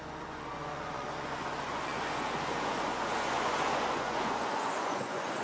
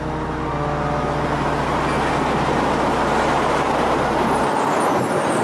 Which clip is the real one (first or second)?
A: second